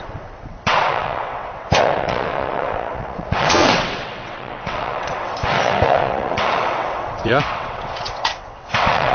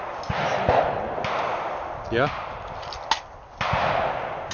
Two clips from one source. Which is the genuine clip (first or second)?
second